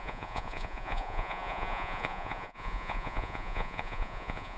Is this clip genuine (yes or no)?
no